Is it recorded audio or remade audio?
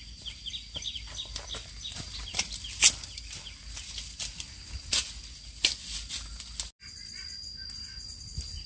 recorded